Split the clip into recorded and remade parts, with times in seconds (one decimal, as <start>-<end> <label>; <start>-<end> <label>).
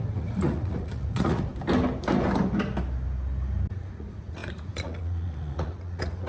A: 0.0-1.5 remade; 1.5-3.7 recorded; 3.7-6.3 remade